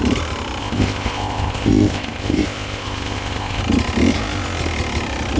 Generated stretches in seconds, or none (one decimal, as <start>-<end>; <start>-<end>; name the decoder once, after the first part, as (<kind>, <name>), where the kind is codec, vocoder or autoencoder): 0.6-3.6 (codec, ZipCodec)